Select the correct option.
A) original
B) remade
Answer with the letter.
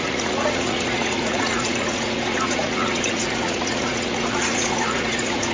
B